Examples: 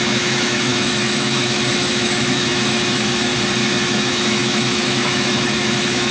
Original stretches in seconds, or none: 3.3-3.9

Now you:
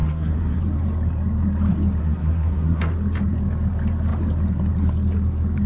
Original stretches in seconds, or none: 0.6-2.0; 2.9-5.7

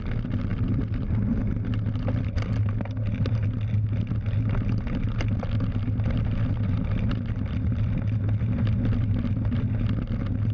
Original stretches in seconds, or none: 0.0-0.5; 1.5-10.5

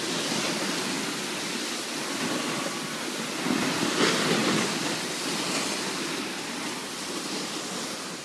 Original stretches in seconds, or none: 0.0-6.8; 7.6-8.2

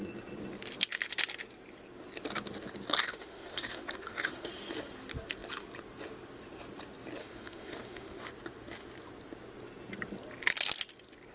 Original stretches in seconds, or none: 0.0-3.0; 4.5-7.2; 8.3-11.3